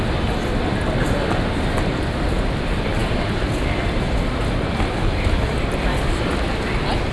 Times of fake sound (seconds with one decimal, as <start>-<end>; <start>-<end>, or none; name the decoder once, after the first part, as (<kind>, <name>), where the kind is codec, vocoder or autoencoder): none